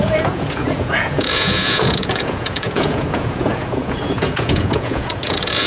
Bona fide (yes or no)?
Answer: no